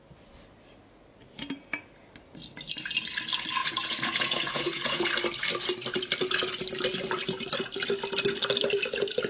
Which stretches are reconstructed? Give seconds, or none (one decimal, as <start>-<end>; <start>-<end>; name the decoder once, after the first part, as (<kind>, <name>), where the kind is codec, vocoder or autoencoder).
3.6-5.1 (vocoder, Vocos)